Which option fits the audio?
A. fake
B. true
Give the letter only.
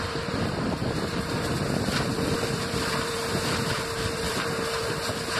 A